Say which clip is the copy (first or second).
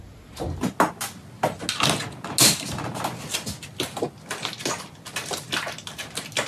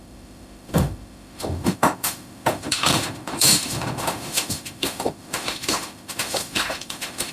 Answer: second